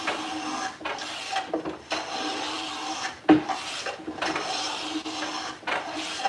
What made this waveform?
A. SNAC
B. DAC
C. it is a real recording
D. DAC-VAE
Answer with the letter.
C